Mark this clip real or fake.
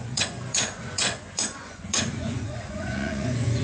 fake